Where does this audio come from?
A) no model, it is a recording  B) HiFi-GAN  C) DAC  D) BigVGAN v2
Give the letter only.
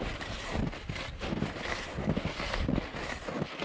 A